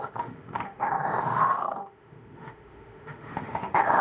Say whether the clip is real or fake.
fake